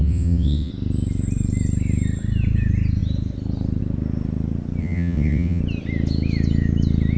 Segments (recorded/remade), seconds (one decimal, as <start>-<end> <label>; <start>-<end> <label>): 0.0-0.7 remade; 0.7-4.8 recorded; 4.8-5.6 remade; 5.6-7.2 recorded